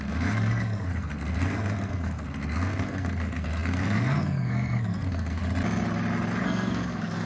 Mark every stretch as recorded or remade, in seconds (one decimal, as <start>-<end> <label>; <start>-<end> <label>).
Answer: 0.0-5.4 remade; 5.4-6.4 recorded; 6.4-7.3 remade